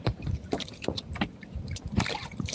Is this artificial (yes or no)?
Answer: yes